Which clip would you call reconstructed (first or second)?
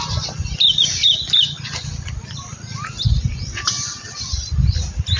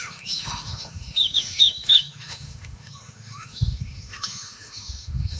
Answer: second